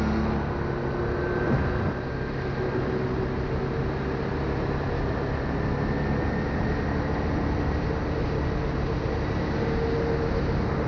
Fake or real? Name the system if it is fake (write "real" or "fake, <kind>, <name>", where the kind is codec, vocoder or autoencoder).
real